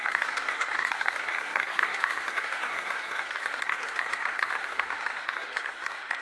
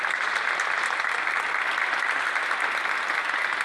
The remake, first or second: first